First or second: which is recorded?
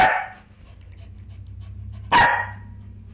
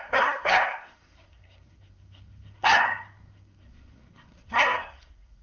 first